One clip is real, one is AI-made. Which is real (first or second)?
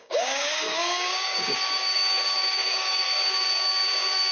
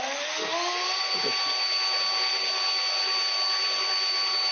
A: second